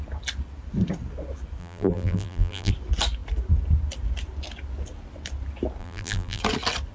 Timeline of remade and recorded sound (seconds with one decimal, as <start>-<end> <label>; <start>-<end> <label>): 0.0-1.6 recorded; 1.6-2.7 remade; 2.7-5.8 recorded; 5.8-6.4 remade; 6.4-6.9 recorded

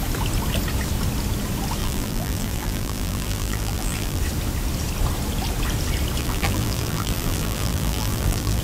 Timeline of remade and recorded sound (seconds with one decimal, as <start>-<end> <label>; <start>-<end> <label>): 0.0-1.8 recorded; 1.8-4.2 remade; 4.2-6.2 recorded; 6.2-8.6 remade

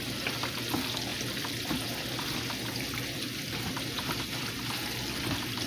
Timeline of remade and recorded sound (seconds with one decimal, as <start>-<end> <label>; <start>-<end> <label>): 0.0-1.1 recorded; 1.1-4.5 remade; 4.5-5.7 recorded

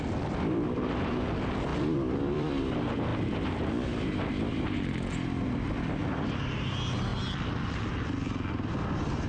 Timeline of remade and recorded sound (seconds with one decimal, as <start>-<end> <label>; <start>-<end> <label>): 0.0-1.7 recorded; 1.7-2.6 remade; 2.6-3.1 recorded; 3.1-4.6 remade; 4.6-6.0 recorded; 6.0-6.5 remade; 6.5-9.3 recorded

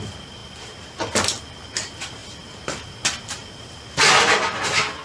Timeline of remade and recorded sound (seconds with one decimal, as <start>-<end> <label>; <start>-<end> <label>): 0.0-5.0 recorded